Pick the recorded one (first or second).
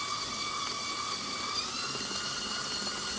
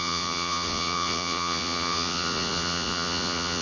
first